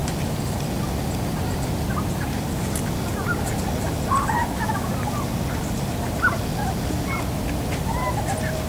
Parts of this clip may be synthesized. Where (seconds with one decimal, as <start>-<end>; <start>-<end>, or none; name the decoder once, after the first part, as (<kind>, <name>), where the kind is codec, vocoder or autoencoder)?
4.4-4.9 (autoencoder, DAC-VAE)